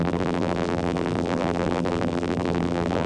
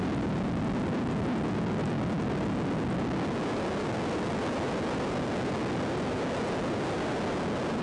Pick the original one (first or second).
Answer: second